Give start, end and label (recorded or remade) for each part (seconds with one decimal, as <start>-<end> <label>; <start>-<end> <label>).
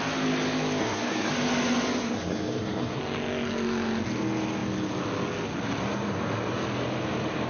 0.0-0.8 recorded; 0.8-1.3 remade; 1.3-2.0 recorded; 2.0-3.0 remade; 3.0-7.5 recorded